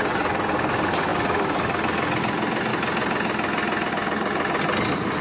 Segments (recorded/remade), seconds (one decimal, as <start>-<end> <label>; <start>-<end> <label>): 0.0-5.2 recorded